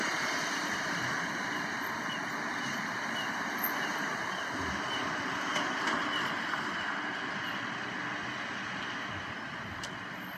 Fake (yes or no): no